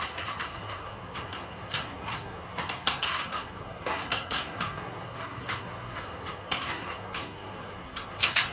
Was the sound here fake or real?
fake